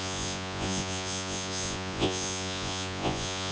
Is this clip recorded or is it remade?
remade